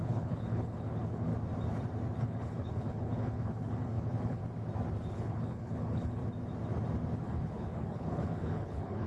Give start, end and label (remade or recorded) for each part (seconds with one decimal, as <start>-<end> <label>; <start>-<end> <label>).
0.0-1.3 remade; 1.3-2.2 recorded; 2.2-4.4 remade; 4.4-5.1 recorded; 5.1-6.2 remade; 6.2-7.2 recorded; 7.2-9.1 remade